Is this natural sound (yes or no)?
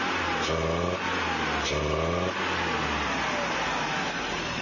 yes